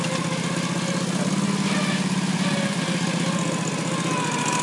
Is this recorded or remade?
recorded